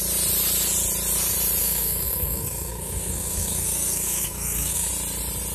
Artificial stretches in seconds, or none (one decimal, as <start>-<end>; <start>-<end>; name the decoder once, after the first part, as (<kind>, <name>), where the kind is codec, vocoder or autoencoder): 1.6-4.9 (codec, SNAC)